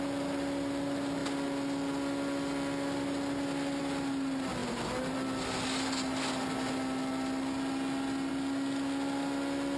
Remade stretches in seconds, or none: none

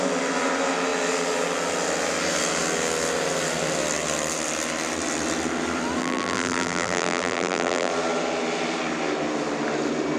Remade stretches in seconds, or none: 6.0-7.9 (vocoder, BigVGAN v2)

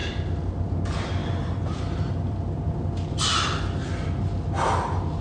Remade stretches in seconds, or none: 0.0-0.7 (vocoder, BigVGAN v2); 1.2-4.3